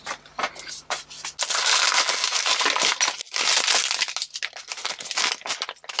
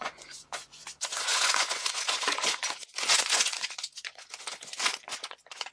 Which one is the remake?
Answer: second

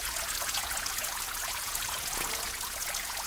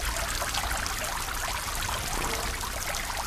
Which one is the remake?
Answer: first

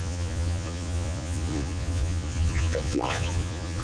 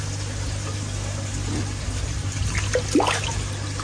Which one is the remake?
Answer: first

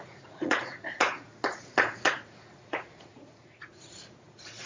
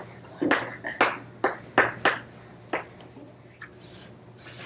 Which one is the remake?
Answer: first